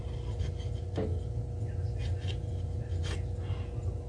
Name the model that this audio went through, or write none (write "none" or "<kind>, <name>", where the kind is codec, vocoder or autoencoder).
none